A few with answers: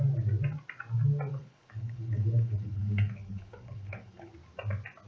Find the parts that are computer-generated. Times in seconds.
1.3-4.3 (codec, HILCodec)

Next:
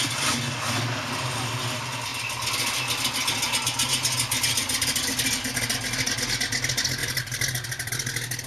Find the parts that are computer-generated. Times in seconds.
none

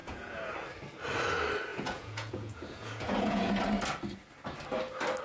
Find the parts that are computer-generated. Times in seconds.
0.0-0.5 (vocoder, Vocos); 1.7-3.5